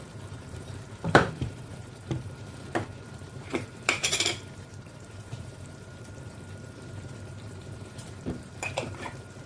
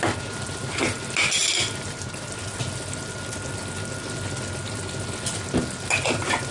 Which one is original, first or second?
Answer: second